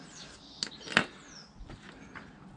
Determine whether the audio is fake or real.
real